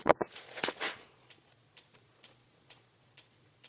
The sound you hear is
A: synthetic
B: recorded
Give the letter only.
A